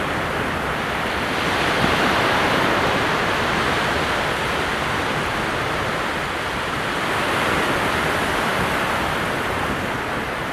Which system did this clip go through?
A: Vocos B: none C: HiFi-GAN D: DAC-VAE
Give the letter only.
B